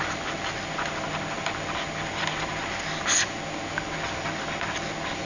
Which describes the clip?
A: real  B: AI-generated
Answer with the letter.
A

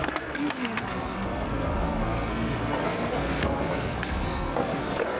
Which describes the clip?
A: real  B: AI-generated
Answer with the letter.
B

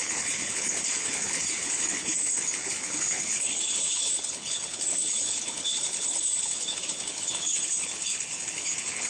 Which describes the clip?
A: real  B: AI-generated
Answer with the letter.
B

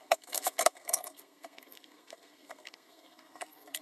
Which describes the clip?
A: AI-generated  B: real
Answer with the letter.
A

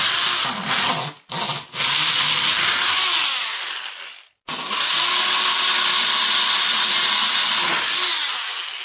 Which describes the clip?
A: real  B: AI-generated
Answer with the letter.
A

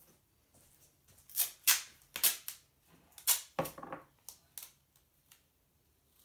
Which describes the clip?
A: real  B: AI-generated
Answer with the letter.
A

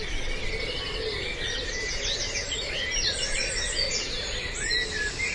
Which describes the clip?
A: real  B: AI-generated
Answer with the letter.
A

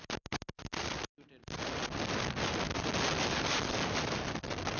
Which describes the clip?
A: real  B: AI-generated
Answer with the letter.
A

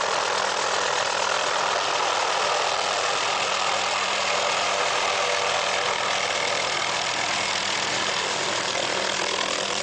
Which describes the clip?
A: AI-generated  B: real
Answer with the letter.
B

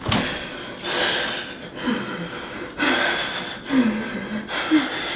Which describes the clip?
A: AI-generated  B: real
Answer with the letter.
B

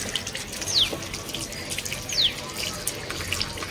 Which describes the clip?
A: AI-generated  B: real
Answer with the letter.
B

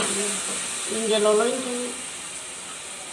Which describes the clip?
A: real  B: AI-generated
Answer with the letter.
A